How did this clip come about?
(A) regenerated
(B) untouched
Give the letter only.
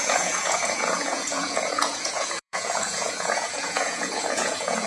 A